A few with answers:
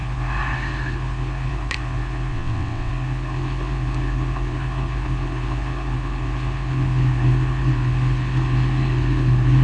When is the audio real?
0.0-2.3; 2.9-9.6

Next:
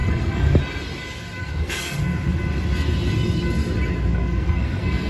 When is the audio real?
0.6-1.4; 2.0-4.1

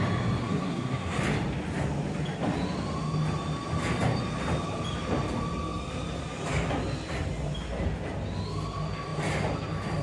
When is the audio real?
0.0-0.4; 1.2-10.0

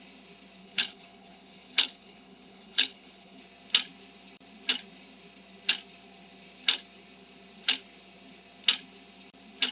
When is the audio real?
0.0-0.6; 3.4-9.7

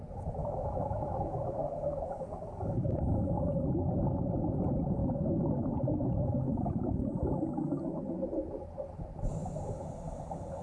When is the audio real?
0.0-0.4; 2.2-5.0; 6.9-10.6

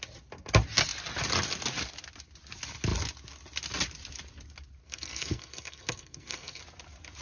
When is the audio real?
0.0-4.8; 6.6-7.2